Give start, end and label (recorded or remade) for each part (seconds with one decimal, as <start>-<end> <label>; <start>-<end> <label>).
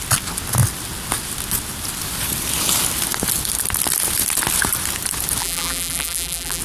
0.0-5.4 recorded; 5.4-6.6 remade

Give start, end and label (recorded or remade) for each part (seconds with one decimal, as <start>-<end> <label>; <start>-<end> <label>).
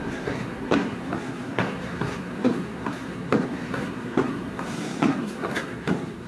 0.0-6.3 remade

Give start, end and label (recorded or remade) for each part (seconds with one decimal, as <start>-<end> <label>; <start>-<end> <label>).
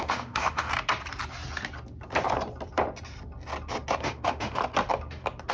0.0-0.7 remade; 0.7-4.0 recorded; 4.0-4.6 remade; 4.6-5.5 recorded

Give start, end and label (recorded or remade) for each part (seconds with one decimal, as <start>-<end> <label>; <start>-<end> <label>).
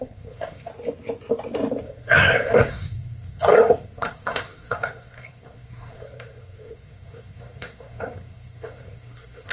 0.0-0.7 remade; 0.7-1.8 recorded; 1.8-9.5 remade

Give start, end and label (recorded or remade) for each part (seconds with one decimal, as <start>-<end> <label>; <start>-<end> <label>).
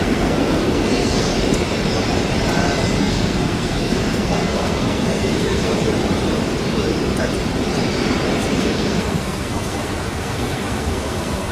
0.0-1.3 remade; 1.3-3.0 recorded; 3.0-5.7 remade; 5.7-8.6 recorded; 8.6-11.5 remade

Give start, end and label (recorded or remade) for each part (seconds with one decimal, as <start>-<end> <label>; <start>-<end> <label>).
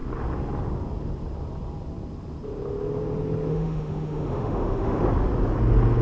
0.0-3.5 recorded; 3.5-5.0 remade; 5.0-6.0 recorded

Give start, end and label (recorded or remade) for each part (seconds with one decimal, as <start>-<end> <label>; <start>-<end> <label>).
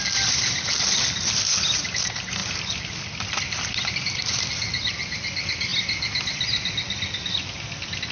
0.0-8.1 recorded